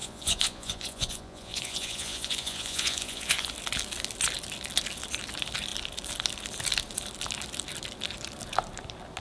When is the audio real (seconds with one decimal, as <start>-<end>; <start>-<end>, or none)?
3.5-9.2